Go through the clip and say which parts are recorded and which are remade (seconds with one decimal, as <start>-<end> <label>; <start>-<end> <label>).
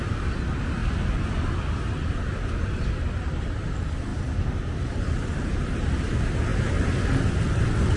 0.0-4.1 recorded; 4.1-5.7 remade; 5.7-8.0 recorded